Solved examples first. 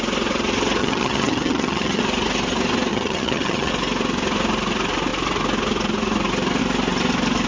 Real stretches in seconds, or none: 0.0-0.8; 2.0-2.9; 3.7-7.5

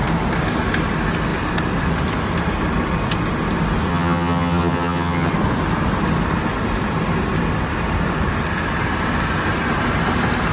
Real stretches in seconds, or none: 0.0-3.9; 5.3-10.5

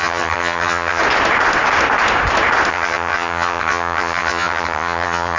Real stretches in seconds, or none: 1.0-2.7

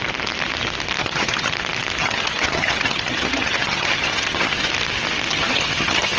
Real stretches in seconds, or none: 0.0-1.0; 1.5-2.0; 4.7-5.3

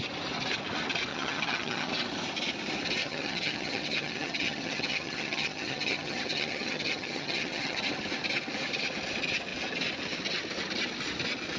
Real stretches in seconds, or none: 0.0-1.1; 1.9-3.0; 7.9-11.6

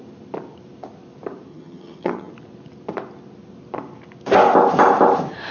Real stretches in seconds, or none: 0.0-1.5; 2.3-5.5